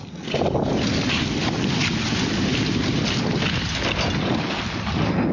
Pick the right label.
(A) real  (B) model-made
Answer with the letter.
A